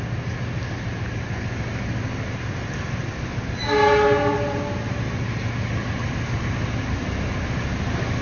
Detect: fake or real real